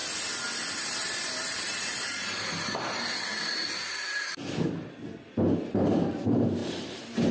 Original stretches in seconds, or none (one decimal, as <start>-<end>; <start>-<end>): 0.0-0.7; 3.3-5.7